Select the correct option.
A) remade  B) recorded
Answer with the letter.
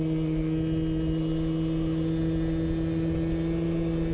B